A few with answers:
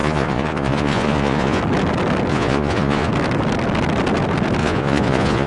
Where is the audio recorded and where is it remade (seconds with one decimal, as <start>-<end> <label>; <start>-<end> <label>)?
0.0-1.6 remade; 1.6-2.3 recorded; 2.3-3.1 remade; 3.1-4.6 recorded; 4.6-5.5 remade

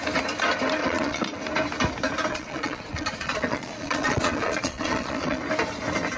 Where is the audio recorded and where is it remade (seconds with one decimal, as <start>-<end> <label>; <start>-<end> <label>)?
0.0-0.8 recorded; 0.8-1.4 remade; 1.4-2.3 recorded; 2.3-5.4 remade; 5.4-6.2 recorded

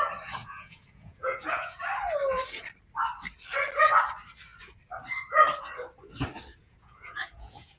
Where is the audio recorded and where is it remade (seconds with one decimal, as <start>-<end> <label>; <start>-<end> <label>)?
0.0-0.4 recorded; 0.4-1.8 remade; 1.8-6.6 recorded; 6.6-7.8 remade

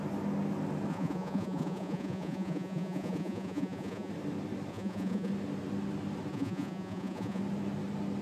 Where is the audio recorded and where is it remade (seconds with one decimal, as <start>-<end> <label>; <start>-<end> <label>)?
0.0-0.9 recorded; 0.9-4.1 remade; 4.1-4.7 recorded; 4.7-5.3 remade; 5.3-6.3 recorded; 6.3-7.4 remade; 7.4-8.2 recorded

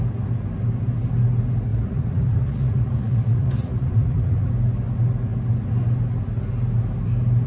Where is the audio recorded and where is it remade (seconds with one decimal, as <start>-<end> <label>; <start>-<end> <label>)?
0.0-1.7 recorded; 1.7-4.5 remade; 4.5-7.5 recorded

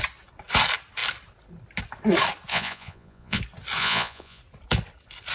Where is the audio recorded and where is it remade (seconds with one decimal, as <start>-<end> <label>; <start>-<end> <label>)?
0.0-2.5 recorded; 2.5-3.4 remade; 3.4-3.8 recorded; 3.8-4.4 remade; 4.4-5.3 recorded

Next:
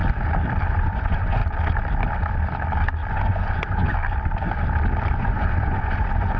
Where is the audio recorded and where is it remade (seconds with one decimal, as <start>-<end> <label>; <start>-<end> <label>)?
0.0-0.7 recorded; 0.7-1.4 remade; 1.4-3.1 recorded; 3.1-3.9 remade; 3.9-5.2 recorded; 5.2-6.4 remade